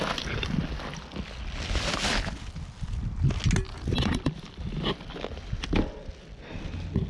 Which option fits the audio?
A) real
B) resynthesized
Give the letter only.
A